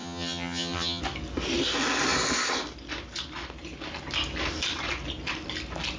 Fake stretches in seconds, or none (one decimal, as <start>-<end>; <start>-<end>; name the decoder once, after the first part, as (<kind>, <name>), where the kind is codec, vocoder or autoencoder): 0.0-1.0 (vocoder, HiFi-GAN)

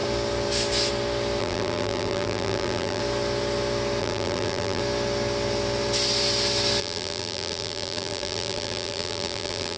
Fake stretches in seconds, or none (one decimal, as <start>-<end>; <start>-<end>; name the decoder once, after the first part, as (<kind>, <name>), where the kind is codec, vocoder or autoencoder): 1.4-3.0 (vocoder, BigVGAN v2); 4.0-4.8; 6.8-9.8

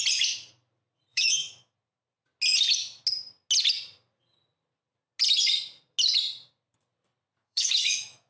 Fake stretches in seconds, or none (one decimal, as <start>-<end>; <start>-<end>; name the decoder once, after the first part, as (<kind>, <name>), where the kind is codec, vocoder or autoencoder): 1.1-1.7 (autoencoder, DAC-VAE); 7.4-8.3

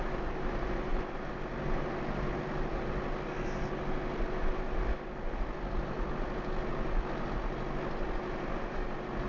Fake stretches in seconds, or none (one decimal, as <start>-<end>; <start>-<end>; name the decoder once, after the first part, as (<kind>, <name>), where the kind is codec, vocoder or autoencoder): none

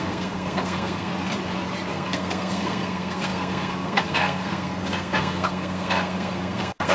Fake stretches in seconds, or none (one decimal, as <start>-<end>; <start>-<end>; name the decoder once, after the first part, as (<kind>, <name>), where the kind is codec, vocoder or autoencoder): 0.0-1.1 (codec, SNAC); 1.9-6.9

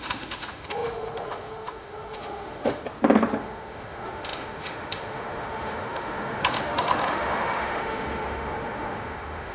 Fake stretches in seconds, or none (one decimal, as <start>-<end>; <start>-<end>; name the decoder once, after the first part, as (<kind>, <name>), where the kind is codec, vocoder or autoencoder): 0.0-2.8 (autoencoder, DAC-VAE); 3.4-9.5

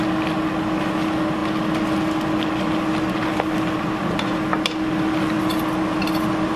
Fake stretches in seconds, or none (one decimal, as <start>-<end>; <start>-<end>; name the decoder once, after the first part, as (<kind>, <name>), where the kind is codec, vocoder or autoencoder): none